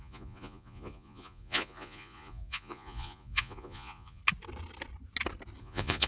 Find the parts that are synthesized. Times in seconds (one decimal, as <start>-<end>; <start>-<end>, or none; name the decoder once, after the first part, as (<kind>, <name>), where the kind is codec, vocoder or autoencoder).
0.0-4.2 (vocoder, Vocos); 5.6-6.1